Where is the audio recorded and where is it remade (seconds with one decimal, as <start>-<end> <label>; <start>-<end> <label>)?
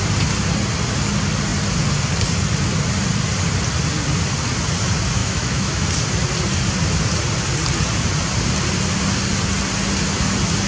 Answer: 0.0-5.2 recorded; 5.2-5.8 remade; 5.8-10.7 recorded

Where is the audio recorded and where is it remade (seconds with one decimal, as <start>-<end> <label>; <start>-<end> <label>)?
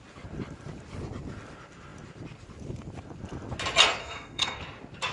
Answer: 0.0-4.0 recorded; 4.0-4.6 remade; 4.6-5.1 recorded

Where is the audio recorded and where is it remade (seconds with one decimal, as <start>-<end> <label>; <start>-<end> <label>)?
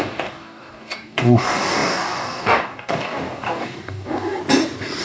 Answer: 0.0-4.4 remade; 4.4-5.0 recorded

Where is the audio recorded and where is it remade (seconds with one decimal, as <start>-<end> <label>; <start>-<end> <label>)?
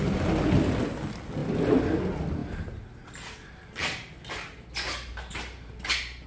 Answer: 0.0-6.3 recorded